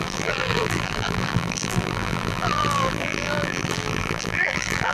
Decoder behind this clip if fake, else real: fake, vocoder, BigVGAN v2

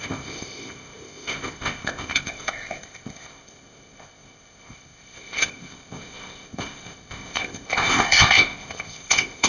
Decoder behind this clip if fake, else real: fake, codec, ZipCodec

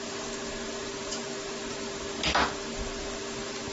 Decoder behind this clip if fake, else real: real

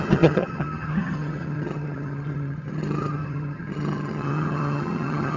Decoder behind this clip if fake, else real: fake, vocoder, HiFi-GAN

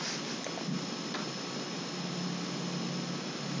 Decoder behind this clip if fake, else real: real